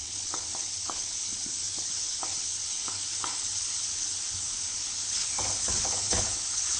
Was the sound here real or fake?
fake